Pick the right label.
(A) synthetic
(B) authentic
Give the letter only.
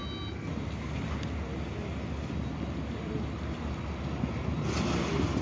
B